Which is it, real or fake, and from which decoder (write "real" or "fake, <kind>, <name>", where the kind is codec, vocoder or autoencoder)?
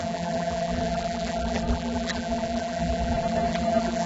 fake, vocoder, BigVGAN v2